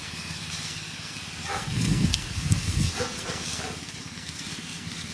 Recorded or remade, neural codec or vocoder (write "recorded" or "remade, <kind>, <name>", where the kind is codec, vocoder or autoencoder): remade, codec, SNAC